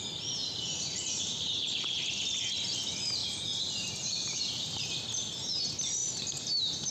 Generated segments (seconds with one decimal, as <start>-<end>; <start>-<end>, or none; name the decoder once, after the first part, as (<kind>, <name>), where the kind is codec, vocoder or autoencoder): 0.4-1.8 (vocoder, BigVGAN v2); 3.2-5.0; 6.0-6.9